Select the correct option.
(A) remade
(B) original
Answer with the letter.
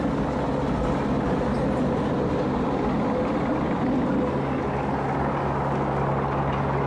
B